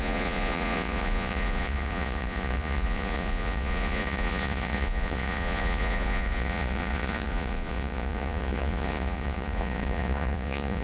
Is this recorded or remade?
remade